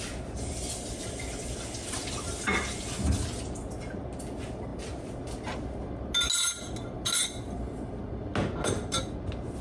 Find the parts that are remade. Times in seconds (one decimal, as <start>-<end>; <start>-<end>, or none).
none